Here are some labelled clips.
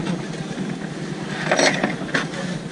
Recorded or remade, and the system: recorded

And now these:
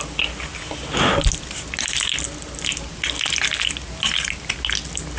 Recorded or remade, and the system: recorded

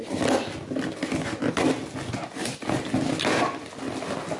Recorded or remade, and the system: recorded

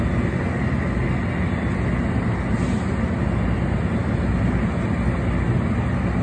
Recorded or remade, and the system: recorded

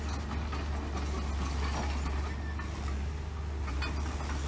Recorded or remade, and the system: recorded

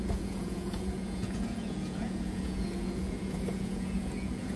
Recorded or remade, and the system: remade, vocoder, Vocos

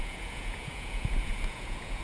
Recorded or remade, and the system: remade, vocoder, Vocos